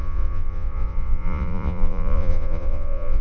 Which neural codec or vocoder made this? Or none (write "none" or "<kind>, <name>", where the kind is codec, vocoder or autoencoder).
vocoder, Vocos